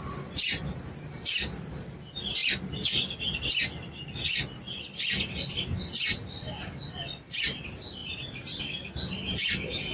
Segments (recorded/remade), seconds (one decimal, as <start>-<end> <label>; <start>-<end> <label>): 0.0-8.0 recorded; 8.0-8.6 remade; 8.6-9.9 recorded